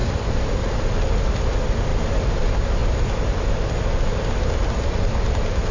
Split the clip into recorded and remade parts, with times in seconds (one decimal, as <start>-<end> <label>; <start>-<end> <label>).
0.0-5.7 recorded